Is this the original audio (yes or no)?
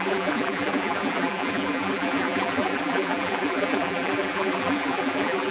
no